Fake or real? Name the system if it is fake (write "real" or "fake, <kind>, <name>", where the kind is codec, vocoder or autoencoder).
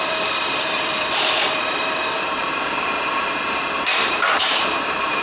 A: fake, vocoder, BigVGAN v2